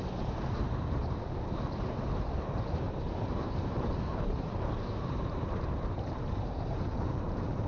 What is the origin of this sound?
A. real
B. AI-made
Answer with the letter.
B